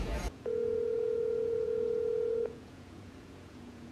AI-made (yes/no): yes